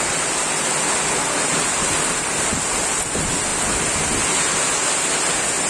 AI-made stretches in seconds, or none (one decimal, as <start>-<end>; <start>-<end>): none